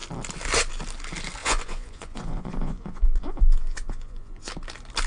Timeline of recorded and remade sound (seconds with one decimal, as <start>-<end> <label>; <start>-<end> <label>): 0.0-1.4 recorded; 1.4-4.5 remade; 4.5-5.1 recorded